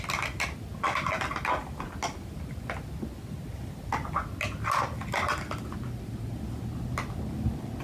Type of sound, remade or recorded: recorded